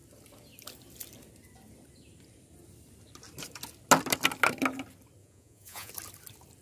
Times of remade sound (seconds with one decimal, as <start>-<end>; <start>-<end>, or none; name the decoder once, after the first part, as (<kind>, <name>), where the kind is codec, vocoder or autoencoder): 5.2-5.9 (vocoder, Vocos)